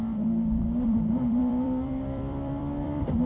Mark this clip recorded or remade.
remade